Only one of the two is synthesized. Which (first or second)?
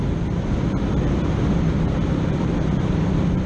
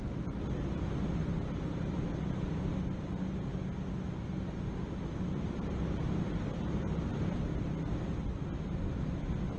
first